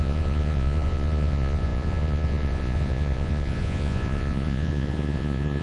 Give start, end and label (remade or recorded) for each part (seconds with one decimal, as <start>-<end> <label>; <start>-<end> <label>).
0.0-5.6 remade